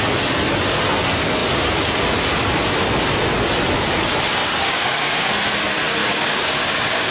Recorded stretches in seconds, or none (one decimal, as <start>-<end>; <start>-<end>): 0.0-4.4; 5.3-6.0